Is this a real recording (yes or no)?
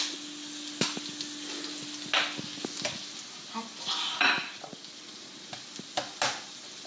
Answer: yes